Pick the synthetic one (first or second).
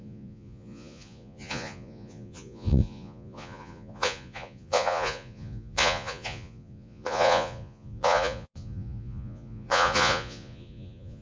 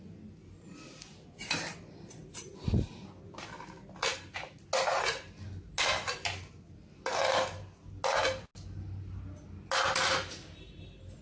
first